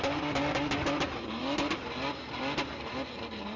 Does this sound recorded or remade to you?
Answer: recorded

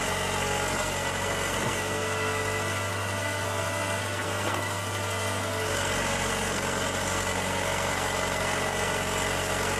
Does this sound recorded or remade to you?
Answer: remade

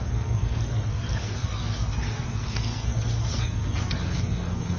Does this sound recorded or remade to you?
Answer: remade